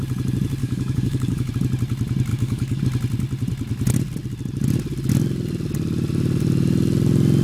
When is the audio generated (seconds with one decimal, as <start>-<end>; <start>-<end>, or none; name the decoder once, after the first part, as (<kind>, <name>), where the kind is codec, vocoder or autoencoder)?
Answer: 0.6-1.5 (codec, DAC); 2.3-2.8